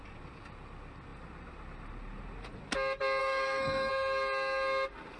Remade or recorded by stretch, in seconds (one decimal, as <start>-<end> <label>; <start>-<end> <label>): 0.0-3.2 recorded; 3.2-3.9 remade; 3.9-5.2 recorded